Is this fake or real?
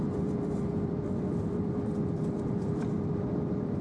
fake